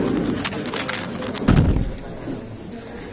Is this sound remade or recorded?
recorded